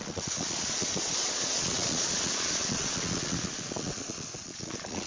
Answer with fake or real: fake